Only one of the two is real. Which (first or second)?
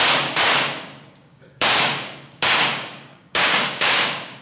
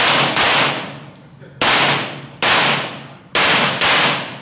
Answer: second